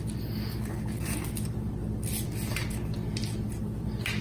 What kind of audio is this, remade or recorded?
recorded